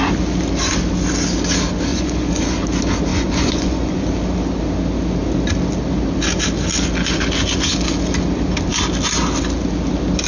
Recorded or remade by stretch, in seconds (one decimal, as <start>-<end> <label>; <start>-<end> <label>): 0.0-1.9 recorded; 1.9-2.4 remade; 2.4-3.1 recorded; 3.1-4.0 remade; 4.0-10.3 recorded